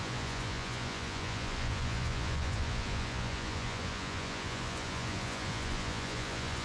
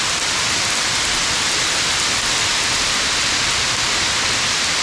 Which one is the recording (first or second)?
second